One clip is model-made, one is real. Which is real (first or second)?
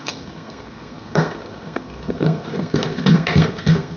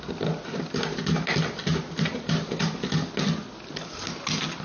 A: second